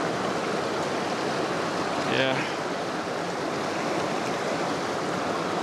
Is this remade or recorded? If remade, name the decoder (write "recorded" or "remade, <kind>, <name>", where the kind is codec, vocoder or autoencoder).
recorded